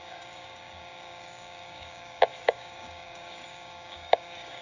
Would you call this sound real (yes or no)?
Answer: no